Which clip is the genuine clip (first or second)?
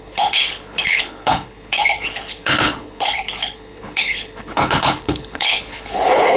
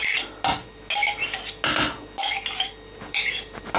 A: second